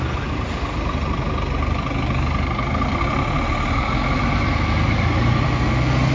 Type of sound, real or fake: real